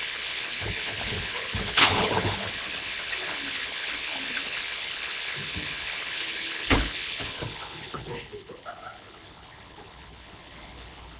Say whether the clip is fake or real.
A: fake